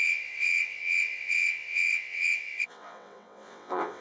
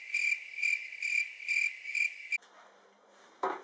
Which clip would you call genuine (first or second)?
second